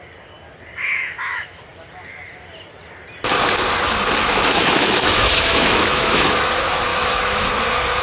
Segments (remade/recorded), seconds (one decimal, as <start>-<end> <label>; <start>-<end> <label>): 0.0-0.8 recorded; 0.8-1.6 remade; 1.6-4.2 recorded; 4.2-6.4 remade; 6.4-6.9 recorded; 6.9-7.5 remade; 7.5-8.0 recorded